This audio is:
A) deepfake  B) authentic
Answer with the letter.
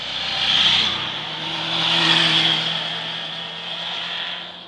B